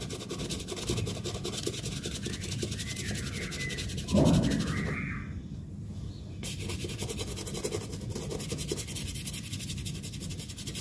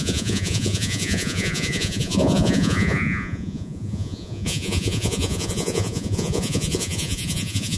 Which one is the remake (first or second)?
second